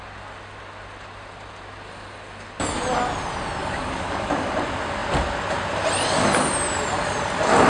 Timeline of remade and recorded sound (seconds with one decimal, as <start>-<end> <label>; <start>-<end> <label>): 0.0-3.6 recorded; 3.6-4.5 remade; 4.5-7.7 recorded